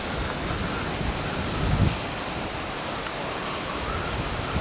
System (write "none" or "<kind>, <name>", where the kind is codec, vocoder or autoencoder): none